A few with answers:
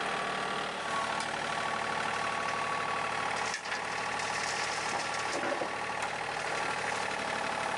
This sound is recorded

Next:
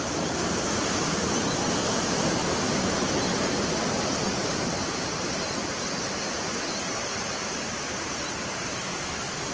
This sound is remade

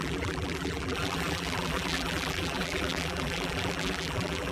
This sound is remade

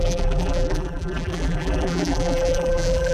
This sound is remade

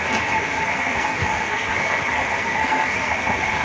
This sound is remade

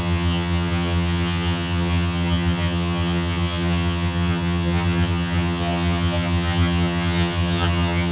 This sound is remade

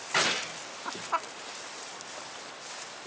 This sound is recorded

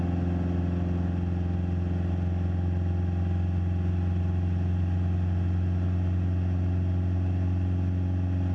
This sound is recorded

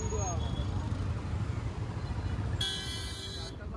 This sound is recorded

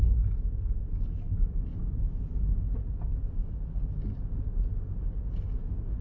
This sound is recorded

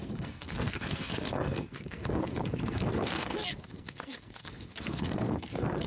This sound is remade